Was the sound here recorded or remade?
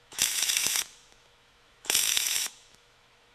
remade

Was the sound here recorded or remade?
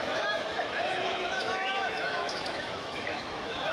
remade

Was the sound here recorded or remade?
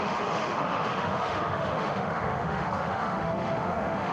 remade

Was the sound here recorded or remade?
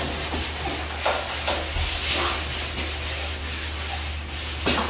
recorded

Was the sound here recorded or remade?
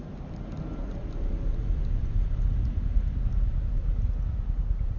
recorded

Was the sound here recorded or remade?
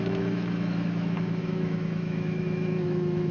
remade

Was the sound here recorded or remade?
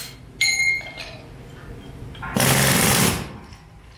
recorded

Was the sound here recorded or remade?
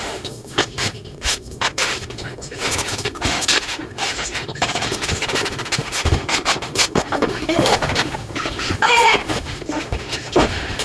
remade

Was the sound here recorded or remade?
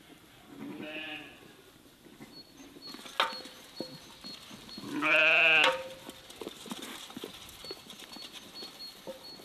recorded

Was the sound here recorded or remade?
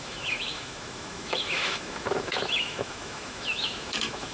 remade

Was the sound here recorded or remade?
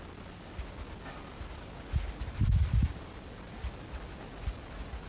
recorded